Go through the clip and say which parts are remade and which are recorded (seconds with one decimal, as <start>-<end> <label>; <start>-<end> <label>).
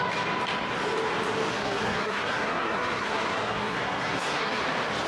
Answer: 0.0-1.5 recorded; 1.5-4.6 remade; 4.6-5.1 recorded